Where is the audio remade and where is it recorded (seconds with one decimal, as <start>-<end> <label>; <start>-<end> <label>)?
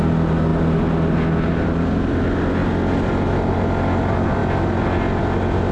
0.0-5.7 recorded